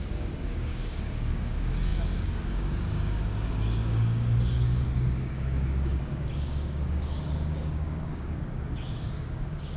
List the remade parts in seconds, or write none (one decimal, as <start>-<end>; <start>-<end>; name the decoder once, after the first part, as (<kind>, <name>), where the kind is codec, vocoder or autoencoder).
0.0-9.8 (codec, DAC)